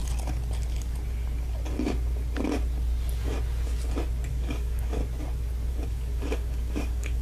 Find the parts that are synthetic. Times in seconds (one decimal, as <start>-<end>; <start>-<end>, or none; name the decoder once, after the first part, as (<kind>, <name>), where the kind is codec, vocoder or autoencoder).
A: 4.3-5.0 (codec, DAC); 5.7-7.2